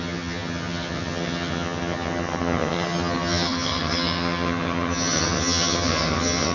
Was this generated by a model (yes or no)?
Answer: yes